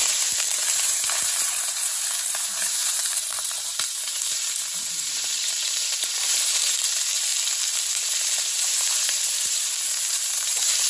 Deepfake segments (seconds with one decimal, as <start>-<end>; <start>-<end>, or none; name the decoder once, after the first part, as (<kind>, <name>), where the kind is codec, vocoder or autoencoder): 0.0-7.3 (vocoder, BigVGAN v2); 7.9-10.9